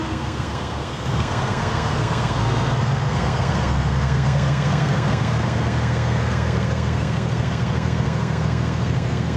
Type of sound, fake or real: fake